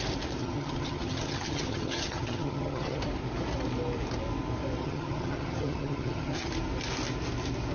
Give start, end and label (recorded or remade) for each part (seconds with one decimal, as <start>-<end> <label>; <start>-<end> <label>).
0.0-0.4 recorded; 0.4-3.0 remade; 3.0-4.8 recorded; 4.8-6.5 remade; 6.5-7.7 recorded